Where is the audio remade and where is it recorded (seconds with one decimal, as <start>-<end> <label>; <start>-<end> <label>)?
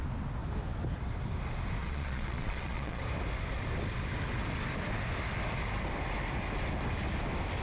0.0-1.8 recorded; 1.8-3.0 remade; 3.0-7.6 recorded